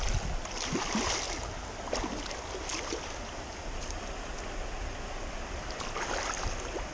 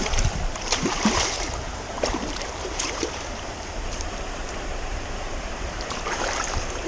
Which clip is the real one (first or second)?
first